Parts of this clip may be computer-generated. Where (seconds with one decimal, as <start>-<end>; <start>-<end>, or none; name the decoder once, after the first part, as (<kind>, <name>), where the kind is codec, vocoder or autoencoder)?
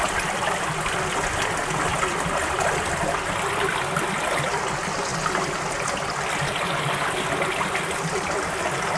none